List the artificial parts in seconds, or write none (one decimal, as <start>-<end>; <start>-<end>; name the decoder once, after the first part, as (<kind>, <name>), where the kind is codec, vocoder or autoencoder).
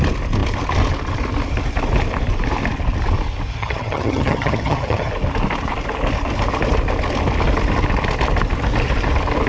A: 3.5-5.1 (vocoder, HiFi-GAN)